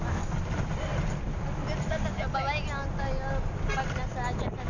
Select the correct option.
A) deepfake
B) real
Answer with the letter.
B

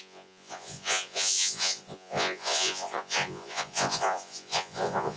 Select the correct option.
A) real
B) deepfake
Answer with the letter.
B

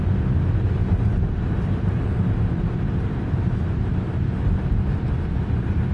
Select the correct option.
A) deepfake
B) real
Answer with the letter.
B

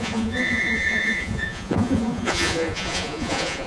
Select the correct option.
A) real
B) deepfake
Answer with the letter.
B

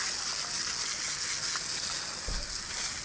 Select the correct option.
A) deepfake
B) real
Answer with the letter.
B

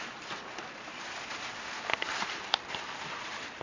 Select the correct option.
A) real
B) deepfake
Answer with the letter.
A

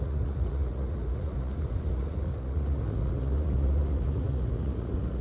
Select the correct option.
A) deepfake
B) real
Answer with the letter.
A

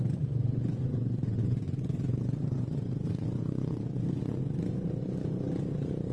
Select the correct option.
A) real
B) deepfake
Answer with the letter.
B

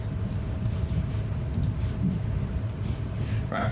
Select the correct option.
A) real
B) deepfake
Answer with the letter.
A